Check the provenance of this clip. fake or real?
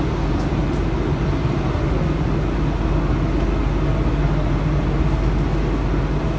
real